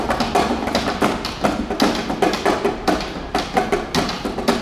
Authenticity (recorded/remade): recorded